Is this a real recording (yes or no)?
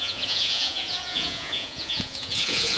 no